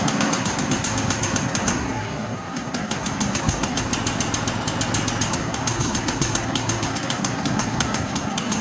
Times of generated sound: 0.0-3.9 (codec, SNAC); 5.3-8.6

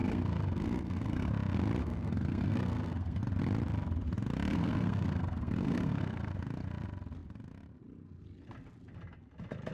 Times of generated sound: 0.0-1.3 (codec, SNAC); 1.8-3.2; 4.5-6.3

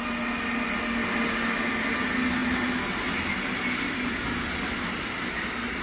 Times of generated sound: none

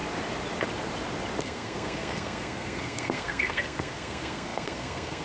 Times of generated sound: 1.4-5.2 (codec, SNAC)